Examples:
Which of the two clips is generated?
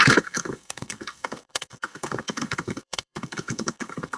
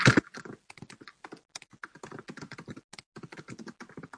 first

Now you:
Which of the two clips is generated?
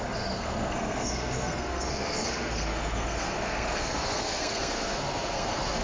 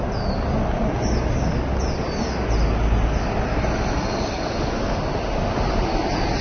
first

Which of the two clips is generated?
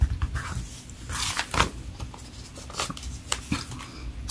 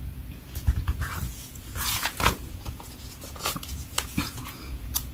second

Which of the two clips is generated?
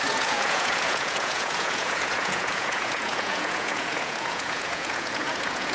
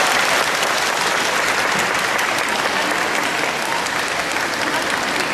first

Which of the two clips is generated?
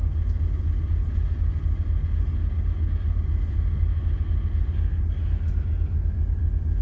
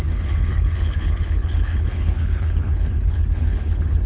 second